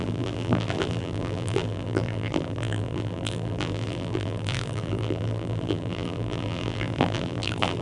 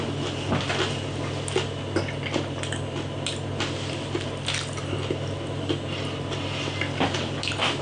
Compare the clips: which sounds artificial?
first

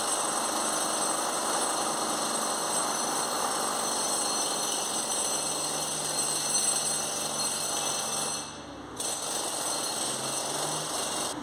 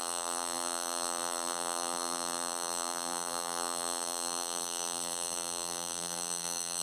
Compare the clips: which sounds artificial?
second